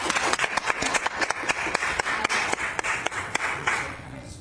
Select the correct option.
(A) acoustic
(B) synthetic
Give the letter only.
B